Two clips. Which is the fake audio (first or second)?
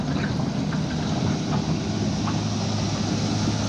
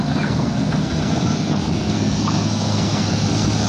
second